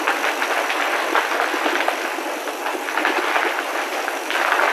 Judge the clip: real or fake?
real